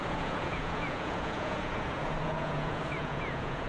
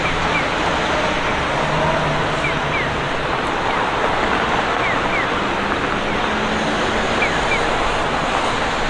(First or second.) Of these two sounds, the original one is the second